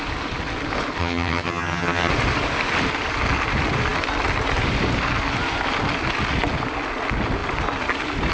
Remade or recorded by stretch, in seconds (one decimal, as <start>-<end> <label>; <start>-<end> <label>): 0.0-1.0 recorded; 1.0-2.1 remade; 2.1-8.3 recorded

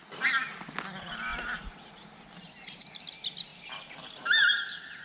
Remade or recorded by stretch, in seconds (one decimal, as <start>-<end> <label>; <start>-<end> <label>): 0.0-1.3 recorded; 1.3-3.0 remade; 3.0-3.5 recorded; 3.5-5.0 remade

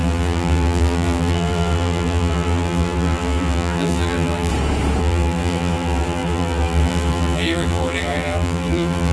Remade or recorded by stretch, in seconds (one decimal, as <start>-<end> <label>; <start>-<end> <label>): 0.0-4.5 remade; 4.5-5.0 recorded; 5.0-9.1 remade

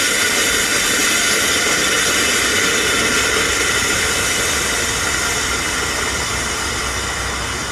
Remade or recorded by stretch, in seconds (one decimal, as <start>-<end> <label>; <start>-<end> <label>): 0.0-7.7 recorded

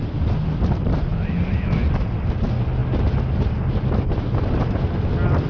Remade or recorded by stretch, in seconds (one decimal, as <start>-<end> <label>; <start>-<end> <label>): 0.0-5.5 recorded